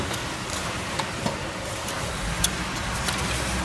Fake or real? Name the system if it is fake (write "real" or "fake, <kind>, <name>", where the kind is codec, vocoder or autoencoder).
real